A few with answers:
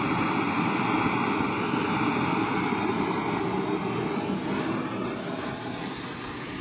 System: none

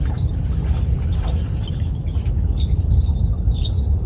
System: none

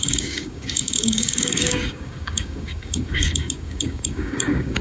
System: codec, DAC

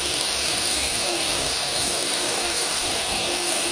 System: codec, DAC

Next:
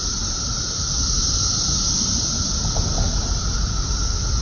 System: none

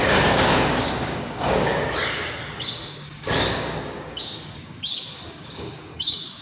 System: codec, DAC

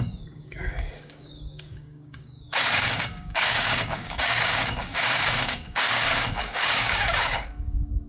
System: codec, DAC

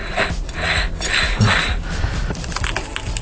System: none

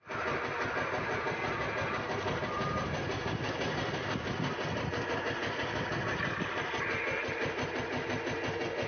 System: none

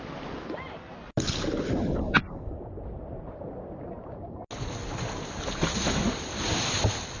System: none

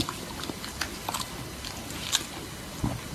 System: none